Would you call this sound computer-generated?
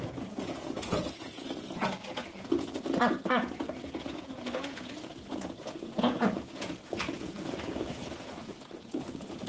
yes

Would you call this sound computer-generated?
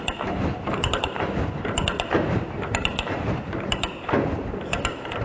no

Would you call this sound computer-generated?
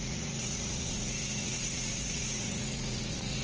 yes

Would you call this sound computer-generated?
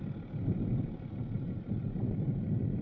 no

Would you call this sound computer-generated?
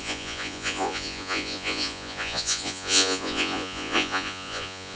yes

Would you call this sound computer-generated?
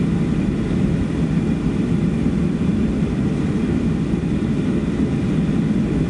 no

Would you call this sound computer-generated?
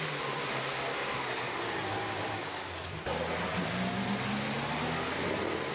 no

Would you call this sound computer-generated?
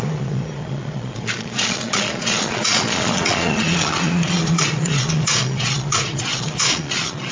yes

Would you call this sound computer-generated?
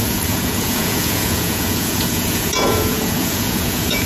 yes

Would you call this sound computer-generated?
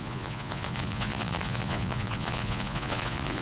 yes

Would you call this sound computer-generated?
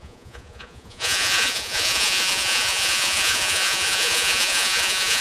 yes